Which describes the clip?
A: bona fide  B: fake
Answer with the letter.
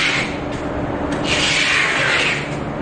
A